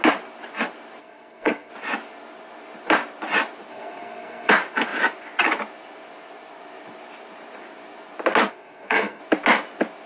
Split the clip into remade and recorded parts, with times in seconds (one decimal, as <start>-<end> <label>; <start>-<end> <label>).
0.0-1.0 recorded; 1.0-1.7 remade; 1.7-3.7 recorded; 3.7-4.5 remade; 4.5-8.5 recorded; 8.5-9.2 remade; 9.2-10.1 recorded